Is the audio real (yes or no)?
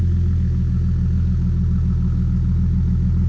yes